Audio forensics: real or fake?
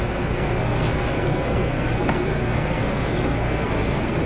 fake